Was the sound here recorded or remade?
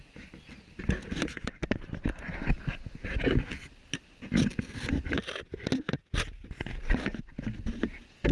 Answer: recorded